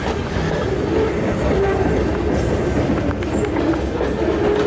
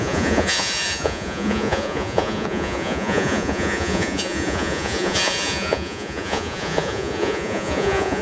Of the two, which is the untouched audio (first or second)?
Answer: first